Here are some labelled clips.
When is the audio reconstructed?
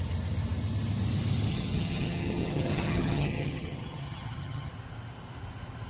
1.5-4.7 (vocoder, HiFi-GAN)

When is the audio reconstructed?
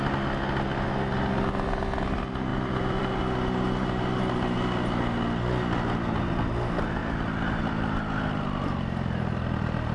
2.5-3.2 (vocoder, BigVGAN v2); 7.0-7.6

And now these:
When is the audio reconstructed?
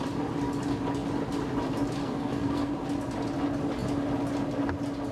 2.0-2.7 (codec, SNAC)